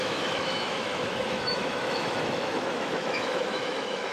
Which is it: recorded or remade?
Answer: remade